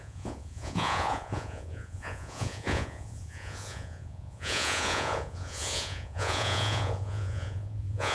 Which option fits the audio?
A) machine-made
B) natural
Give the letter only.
A